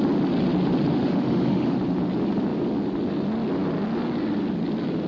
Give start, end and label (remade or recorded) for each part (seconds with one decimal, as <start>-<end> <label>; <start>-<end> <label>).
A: 0.0-0.9 recorded; 0.9-1.8 remade; 1.8-5.1 recorded